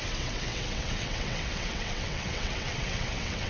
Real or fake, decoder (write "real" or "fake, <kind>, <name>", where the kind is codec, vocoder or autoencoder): fake, vocoder, WaveNeXt